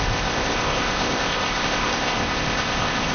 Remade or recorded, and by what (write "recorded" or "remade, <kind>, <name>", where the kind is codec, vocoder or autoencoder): remade, codec, ZipCodec